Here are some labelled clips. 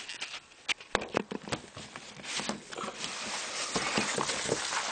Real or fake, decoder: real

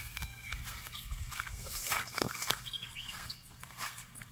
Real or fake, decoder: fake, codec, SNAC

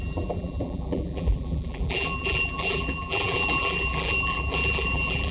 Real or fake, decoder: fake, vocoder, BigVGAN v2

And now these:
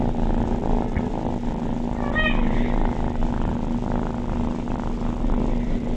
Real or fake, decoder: real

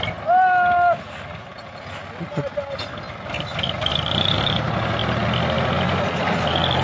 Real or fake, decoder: real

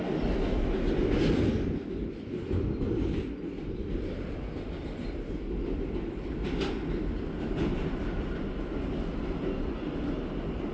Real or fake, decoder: real